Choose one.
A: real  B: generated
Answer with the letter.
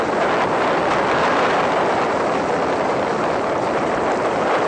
A